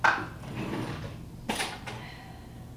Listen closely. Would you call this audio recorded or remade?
recorded